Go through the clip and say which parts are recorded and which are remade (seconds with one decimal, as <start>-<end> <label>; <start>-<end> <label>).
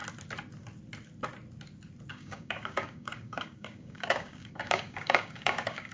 0.0-2.1 recorded; 2.1-5.9 remade